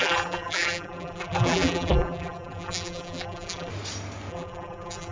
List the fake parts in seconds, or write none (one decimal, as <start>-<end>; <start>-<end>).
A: 0.0-3.7; 4.3-5.1